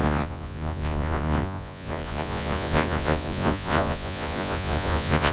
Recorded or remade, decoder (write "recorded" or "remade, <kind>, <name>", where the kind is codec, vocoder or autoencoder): remade, vocoder, Vocos